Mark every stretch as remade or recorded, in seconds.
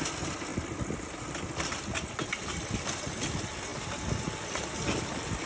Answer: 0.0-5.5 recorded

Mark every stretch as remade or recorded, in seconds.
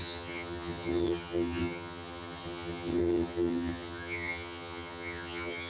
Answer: 0.0-5.7 remade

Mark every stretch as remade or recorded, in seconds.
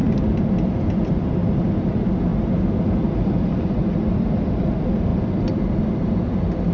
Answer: 0.0-6.7 recorded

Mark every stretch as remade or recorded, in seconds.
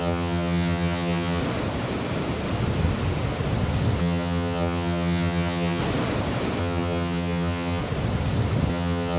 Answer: 0.0-1.4 remade; 1.4-4.0 recorded; 4.0-5.8 remade; 5.8-6.6 recorded; 6.6-7.8 remade; 7.8-8.7 recorded; 8.7-9.2 remade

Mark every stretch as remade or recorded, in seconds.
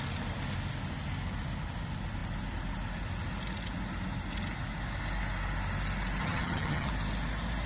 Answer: 0.0-6.2 recorded; 6.2-6.9 remade; 6.9-7.7 recorded